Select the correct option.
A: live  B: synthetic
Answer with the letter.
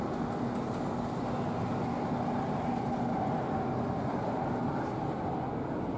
A